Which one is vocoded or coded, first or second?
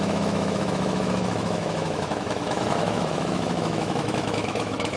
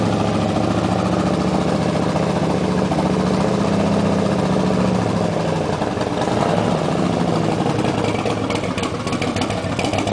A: first